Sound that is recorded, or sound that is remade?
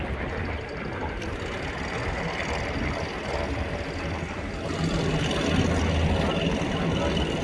recorded